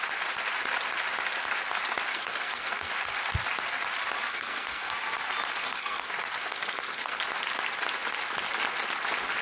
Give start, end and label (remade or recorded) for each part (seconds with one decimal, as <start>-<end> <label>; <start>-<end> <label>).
0.0-2.1 recorded; 2.1-2.9 remade; 2.9-4.3 recorded; 4.3-4.9 remade; 4.9-5.6 recorded; 5.6-6.1 remade; 6.1-6.5 recorded; 6.5-7.2 remade; 7.2-9.4 recorded